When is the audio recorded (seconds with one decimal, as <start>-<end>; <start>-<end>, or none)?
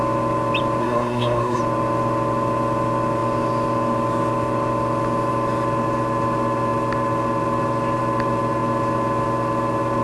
0.0-0.8; 1.6-10.0